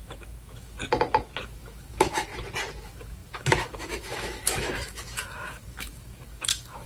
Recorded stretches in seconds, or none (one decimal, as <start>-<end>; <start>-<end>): 0.8-1.4; 2.3-2.8